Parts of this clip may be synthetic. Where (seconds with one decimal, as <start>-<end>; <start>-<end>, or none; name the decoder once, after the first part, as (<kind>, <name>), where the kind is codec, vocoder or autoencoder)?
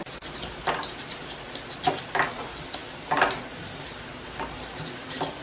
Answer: none